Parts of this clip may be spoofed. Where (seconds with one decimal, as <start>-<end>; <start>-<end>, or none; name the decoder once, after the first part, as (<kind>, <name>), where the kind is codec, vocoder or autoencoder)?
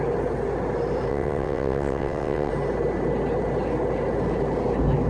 1.1-2.5 (vocoder, WaveNeXt)